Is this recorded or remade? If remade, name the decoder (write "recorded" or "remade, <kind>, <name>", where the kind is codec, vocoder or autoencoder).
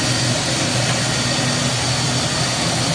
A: recorded